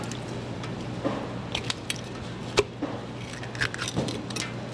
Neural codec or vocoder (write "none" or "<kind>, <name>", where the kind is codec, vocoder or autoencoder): none